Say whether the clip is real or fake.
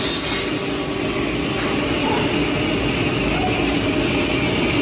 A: real